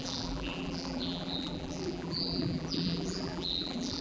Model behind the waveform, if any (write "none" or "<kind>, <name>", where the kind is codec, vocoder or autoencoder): vocoder, BigVGAN v2